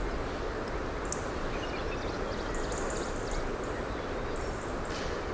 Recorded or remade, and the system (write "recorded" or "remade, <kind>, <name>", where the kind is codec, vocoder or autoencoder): recorded